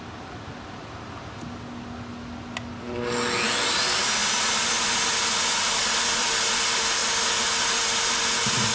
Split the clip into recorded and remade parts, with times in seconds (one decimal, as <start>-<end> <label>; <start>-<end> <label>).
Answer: 0.0-8.7 recorded